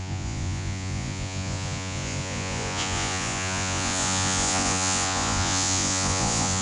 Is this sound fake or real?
fake